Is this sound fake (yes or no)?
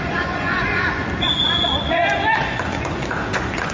yes